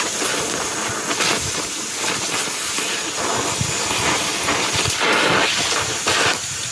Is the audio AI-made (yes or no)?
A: no